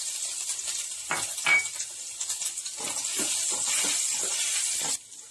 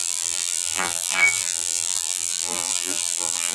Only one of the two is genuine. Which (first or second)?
first